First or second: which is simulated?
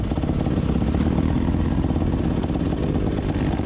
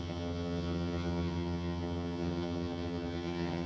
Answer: second